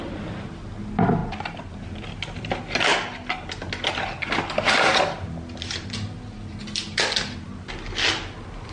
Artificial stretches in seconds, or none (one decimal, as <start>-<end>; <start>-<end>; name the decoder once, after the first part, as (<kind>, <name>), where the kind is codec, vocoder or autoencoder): none